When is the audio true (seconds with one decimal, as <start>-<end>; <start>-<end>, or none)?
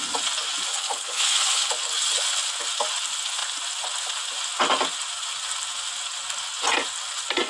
0.0-0.7; 1.7-7.5